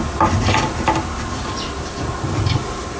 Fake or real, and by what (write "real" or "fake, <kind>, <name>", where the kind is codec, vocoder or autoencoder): fake, vocoder, BigVGAN v2